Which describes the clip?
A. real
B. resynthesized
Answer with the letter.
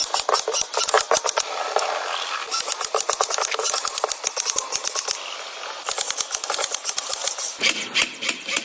A